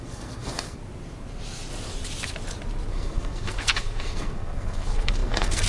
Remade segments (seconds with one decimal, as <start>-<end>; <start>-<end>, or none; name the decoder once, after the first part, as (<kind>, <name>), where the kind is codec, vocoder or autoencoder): 0.0-0.8 (codec, SNAC); 2.9-5.7